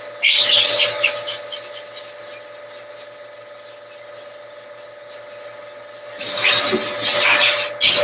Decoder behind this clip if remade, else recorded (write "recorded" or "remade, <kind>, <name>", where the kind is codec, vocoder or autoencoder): recorded